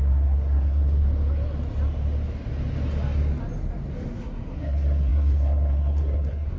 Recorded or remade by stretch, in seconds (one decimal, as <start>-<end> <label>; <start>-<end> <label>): 0.0-1.0 remade; 1.0-3.9 recorded; 3.9-6.6 remade